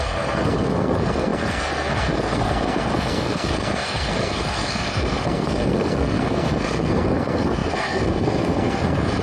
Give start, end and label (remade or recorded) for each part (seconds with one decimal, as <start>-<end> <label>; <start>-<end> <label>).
0.0-9.2 remade